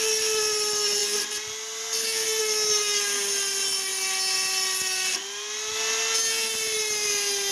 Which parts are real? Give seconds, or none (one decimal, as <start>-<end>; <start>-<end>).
0.0-7.5